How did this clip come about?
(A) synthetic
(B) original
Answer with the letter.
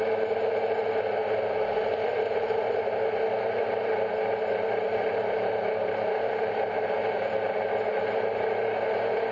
B